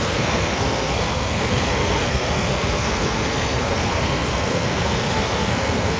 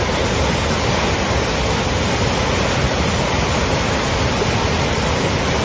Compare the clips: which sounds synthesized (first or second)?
first